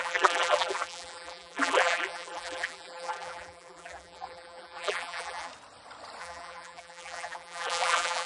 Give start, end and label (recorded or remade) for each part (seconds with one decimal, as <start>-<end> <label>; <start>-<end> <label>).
0.0-5.5 remade; 5.5-6.2 recorded; 6.2-8.3 remade